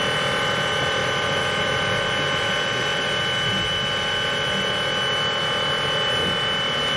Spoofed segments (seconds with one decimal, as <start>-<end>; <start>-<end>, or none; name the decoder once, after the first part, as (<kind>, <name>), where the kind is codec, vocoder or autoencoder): 1.0-1.9 (vocoder, BigVGAN v2)